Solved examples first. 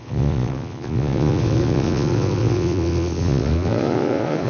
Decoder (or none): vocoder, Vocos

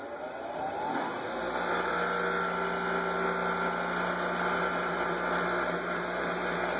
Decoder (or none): none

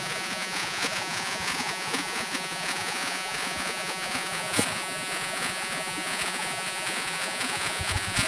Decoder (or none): vocoder, Vocos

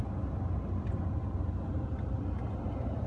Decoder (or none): none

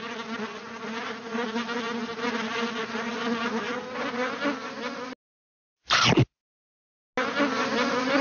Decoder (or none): none